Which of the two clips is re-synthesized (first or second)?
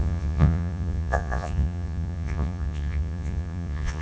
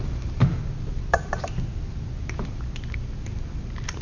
first